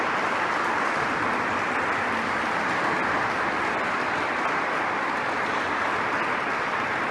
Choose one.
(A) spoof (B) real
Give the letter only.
B